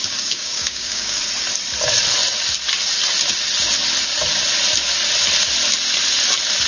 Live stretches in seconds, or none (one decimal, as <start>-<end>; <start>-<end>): 1.2-6.7

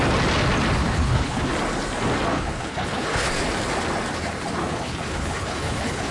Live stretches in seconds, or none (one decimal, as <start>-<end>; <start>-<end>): 0.0-0.8; 1.5-2.3; 3.3-4.6

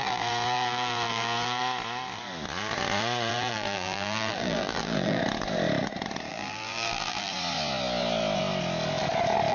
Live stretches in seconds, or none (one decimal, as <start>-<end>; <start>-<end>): 1.6-3.3; 5.2-6.3; 7.3-9.5

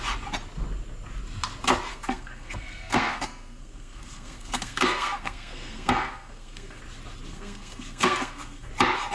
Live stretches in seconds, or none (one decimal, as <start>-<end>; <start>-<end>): 0.0-1.9; 6.8-7.3; 8.7-9.1

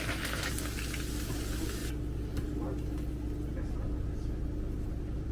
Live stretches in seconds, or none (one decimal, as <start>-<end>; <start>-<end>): 0.0-5.3

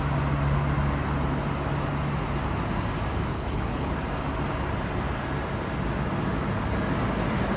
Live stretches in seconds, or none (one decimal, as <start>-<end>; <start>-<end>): 0.0-3.3; 3.9-7.6

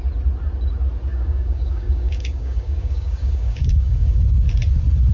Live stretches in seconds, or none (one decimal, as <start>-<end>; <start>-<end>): 0.0-1.1; 4.2-5.1

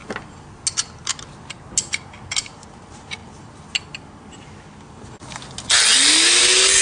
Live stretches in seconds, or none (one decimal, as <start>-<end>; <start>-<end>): 0.0-6.8